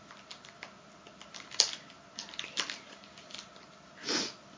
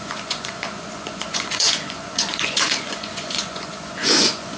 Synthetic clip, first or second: second